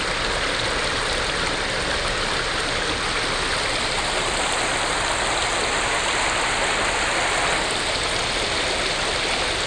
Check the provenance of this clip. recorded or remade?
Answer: recorded